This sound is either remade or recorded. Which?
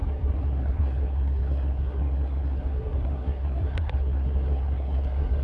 remade